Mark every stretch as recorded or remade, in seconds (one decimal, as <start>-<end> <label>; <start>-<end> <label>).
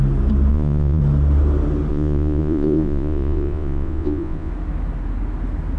0.0-0.5 recorded; 0.5-1.0 remade; 1.0-1.9 recorded; 1.9-4.5 remade; 4.5-5.8 recorded